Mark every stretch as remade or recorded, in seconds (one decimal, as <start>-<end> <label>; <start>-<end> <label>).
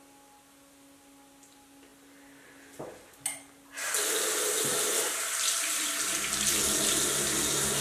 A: 0.0-7.8 recorded